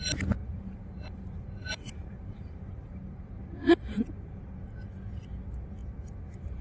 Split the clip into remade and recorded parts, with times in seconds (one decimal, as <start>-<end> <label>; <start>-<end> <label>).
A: 0.0-0.4 recorded; 0.4-4.4 remade; 4.4-5.8 recorded; 5.8-6.6 remade